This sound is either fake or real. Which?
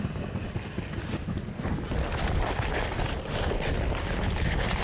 real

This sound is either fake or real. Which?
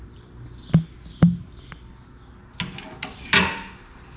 real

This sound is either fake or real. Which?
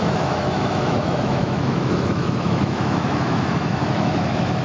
fake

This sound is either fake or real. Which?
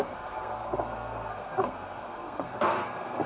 fake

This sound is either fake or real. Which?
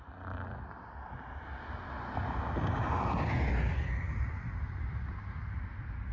real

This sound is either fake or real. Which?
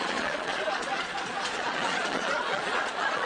fake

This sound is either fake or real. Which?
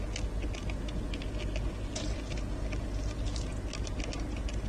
real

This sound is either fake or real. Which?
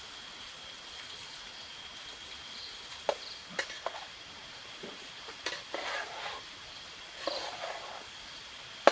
real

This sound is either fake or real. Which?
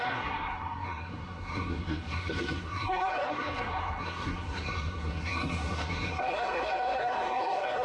fake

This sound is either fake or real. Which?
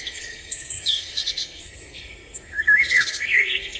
fake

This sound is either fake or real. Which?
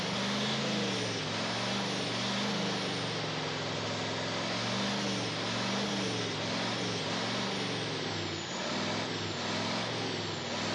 real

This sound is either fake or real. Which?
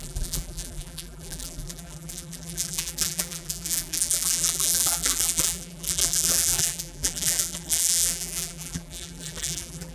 fake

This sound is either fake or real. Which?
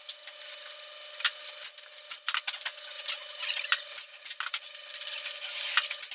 real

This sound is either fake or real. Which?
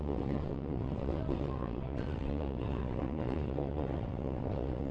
fake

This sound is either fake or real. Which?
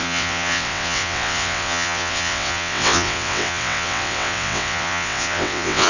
fake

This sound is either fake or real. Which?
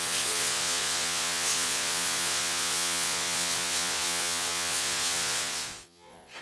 fake